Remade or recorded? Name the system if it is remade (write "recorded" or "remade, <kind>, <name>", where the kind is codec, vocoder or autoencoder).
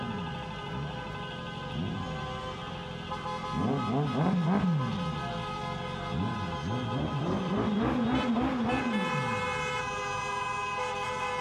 recorded